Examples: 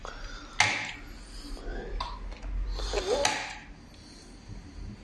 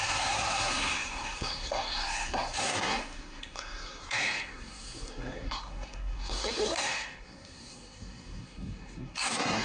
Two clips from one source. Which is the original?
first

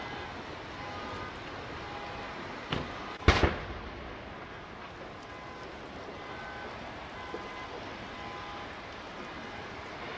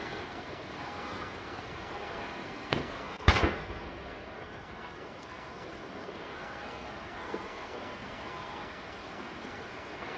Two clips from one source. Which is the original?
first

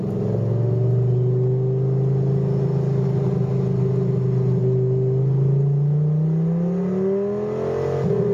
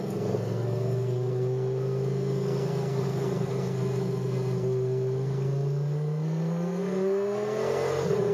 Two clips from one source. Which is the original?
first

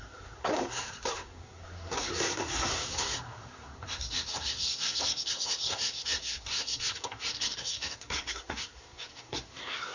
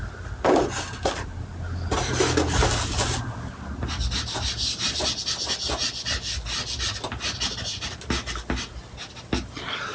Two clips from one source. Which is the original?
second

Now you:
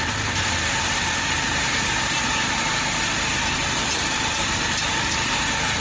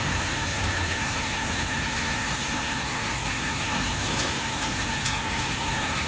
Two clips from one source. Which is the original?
first